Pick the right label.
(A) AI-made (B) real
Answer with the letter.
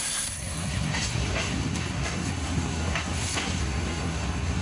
A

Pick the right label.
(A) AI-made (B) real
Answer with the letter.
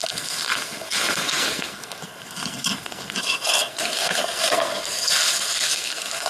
A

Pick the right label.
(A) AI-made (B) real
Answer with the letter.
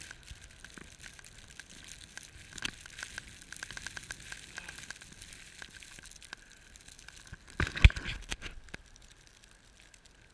B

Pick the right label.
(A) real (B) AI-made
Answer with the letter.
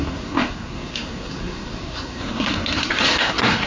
B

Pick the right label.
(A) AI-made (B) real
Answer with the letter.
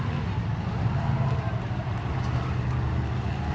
B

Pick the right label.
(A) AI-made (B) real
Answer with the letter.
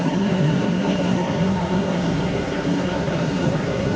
A